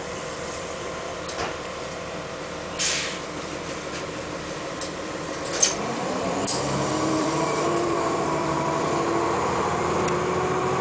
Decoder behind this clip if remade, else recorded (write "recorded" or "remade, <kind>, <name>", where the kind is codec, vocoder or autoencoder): remade, vocoder, BigVGAN v2